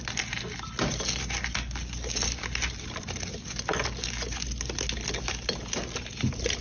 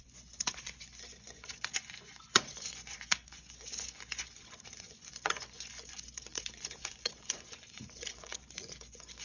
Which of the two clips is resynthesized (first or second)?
second